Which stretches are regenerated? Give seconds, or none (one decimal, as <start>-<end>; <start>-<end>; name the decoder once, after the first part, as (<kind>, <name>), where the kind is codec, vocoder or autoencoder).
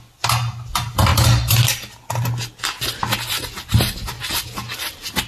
none